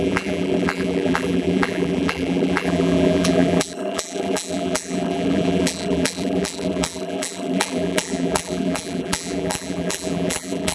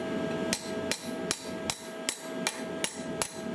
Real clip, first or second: second